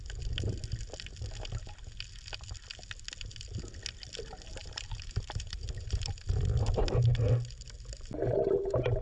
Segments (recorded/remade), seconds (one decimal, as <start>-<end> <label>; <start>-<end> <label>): 0.0-4.6 recorded; 4.6-6.7 remade; 6.7-9.0 recorded